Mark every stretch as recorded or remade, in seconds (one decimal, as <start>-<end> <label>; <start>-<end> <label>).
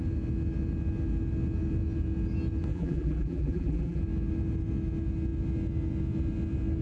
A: 0.0-2.7 recorded; 2.7-4.0 remade; 4.0-6.8 recorded